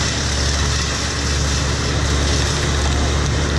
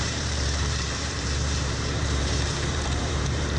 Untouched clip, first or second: first